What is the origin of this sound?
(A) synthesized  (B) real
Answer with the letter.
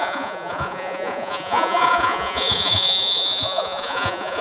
A